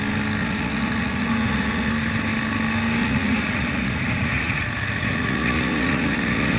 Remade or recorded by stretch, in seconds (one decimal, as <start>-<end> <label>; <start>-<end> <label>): 0.0-0.4 recorded; 0.4-1.9 remade; 1.9-3.0 recorded; 3.0-6.6 remade